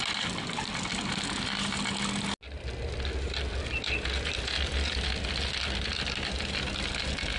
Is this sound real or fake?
real